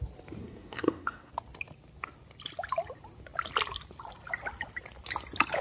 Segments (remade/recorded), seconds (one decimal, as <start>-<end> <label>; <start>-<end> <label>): 0.0-0.4 recorded; 0.4-1.3 remade; 1.3-5.6 recorded